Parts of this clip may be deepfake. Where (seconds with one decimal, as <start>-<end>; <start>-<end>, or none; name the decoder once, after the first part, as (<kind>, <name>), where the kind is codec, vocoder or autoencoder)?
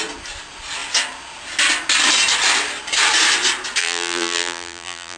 3.8-5.2 (vocoder, BigVGAN v2)